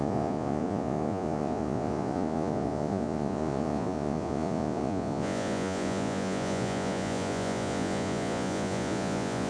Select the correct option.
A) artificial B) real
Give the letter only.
A